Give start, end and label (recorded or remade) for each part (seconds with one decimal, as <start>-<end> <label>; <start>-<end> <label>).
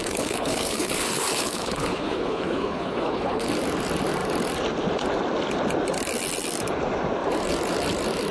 0.0-3.5 remade; 3.5-8.3 recorded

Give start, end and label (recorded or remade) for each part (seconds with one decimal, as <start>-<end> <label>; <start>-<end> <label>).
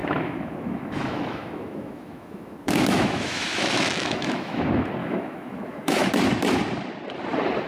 0.0-4.6 remade; 4.6-5.0 recorded; 5.0-6.1 remade; 6.1-7.7 recorded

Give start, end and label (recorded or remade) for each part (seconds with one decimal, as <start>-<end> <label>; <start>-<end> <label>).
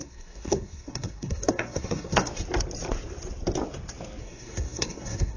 0.0-2.3 remade; 2.3-4.2 recorded; 4.2-5.4 remade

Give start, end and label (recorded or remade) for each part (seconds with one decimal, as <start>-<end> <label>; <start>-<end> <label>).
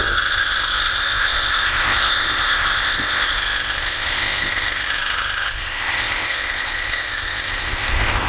0.0-8.3 remade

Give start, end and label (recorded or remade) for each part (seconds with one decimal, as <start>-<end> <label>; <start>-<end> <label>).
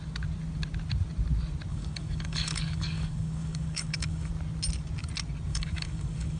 0.0-1.7 recorded; 1.7-4.3 remade; 4.3-5.5 recorded; 5.5-6.4 remade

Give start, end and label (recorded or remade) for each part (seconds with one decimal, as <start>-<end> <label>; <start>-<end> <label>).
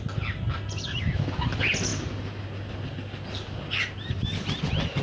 0.0-5.0 recorded